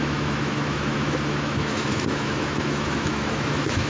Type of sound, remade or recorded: remade